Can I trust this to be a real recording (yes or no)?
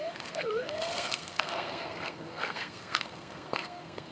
no